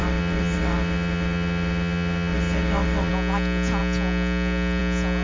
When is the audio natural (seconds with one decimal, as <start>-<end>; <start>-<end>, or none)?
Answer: 3.1-5.2